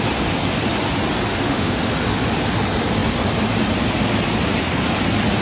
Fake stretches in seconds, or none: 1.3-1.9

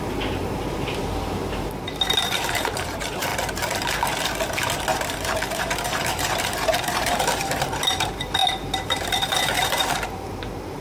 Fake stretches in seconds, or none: 0.0-3.3; 5.6-10.8

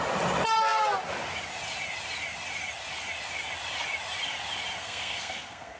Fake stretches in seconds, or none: 4.8-5.8

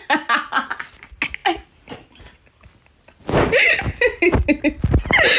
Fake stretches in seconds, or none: none

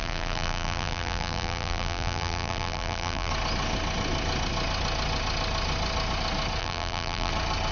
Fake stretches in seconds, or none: 0.0-3.3; 6.6-7.3

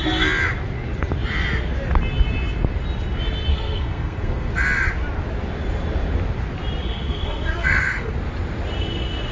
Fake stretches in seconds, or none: 3.5-4.5; 6.8-8.1

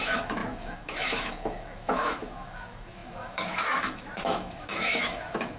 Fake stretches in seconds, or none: 0.0-5.6

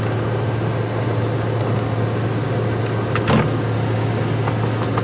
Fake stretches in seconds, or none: none